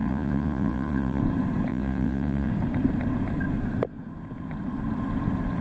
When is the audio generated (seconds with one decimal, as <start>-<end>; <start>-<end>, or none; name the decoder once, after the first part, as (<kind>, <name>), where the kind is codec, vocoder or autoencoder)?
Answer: 0.0-1.2 (vocoder, Vocos); 1.7-2.5